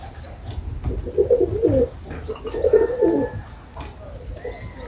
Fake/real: real